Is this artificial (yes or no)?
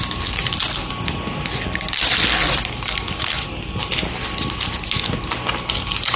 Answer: no